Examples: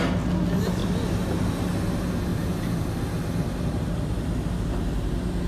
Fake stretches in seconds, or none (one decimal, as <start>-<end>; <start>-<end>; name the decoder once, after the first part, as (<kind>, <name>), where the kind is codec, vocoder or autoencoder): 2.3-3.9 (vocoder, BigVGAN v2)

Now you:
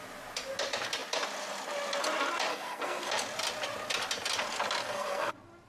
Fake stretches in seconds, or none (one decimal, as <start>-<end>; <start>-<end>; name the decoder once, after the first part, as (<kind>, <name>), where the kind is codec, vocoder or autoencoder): 2.5-3.1 (codec, SNAC); 4.8-5.3

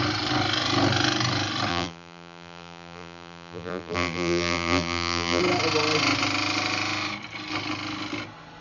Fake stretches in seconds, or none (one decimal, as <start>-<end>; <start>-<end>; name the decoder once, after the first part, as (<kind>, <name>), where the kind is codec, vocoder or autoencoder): 1.7-5.4 (vocoder, BigVGAN v2)

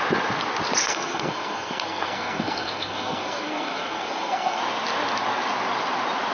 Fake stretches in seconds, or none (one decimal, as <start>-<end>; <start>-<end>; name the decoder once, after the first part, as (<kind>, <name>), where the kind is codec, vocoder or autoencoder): 0.8-4.6 (codec, SNAC)

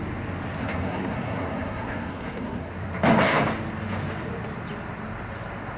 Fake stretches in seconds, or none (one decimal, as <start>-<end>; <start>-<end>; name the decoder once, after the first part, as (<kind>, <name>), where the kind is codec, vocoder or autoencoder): 0.6-2.7 (codec, SNAC)